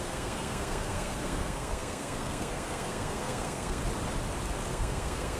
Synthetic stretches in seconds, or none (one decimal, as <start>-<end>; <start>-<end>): 0.0-3.8; 4.7-5.4